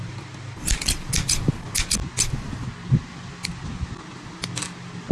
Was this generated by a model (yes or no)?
no